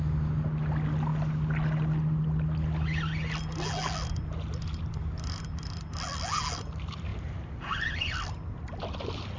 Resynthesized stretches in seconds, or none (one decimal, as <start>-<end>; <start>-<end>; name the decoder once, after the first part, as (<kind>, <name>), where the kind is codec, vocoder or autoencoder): none